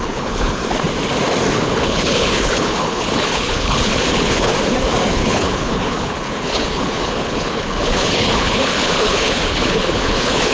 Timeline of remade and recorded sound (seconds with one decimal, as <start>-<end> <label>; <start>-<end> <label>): 0.0-0.6 remade; 0.6-1.6 recorded; 1.6-4.5 remade; 4.5-5.1 recorded; 5.1-10.5 remade

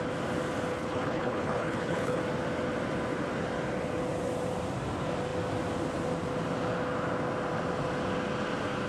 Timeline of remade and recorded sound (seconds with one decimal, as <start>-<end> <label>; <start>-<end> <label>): 0.0-0.7 recorded; 0.7-2.2 remade; 2.2-8.9 recorded

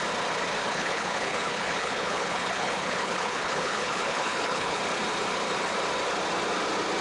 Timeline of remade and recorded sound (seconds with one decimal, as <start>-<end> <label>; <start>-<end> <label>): 0.0-0.6 recorded; 0.6-4.8 remade; 4.8-7.0 recorded

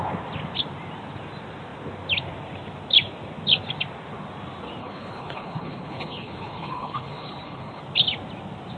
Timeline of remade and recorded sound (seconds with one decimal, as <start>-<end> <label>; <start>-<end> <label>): 0.0-4.8 recorded; 4.8-7.8 remade; 7.8-8.8 recorded